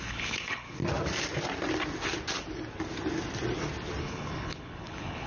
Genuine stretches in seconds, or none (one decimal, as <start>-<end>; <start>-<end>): 0.8-4.0